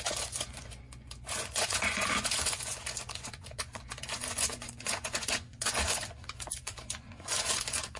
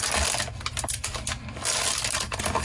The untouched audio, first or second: second